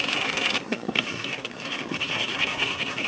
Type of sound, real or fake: fake